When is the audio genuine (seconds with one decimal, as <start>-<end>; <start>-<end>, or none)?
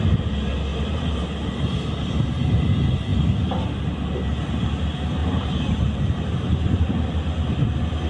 0.0-0.7; 1.3-5.2; 6.8-8.1